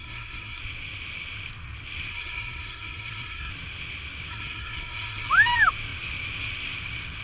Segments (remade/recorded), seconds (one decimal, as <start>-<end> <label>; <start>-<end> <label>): 0.0-0.6 remade; 0.6-2.1 recorded; 2.1-3.5 remade; 3.5-4.3 recorded; 4.3-5.3 remade; 5.3-7.2 recorded